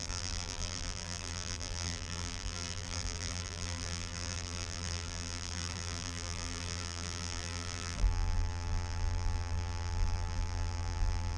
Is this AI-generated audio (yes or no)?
yes